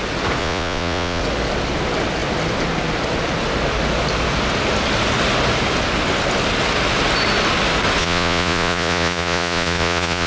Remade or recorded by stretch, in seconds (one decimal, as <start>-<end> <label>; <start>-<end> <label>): 0.0-0.4 recorded; 0.4-1.2 remade; 1.2-8.0 recorded; 8.0-10.3 remade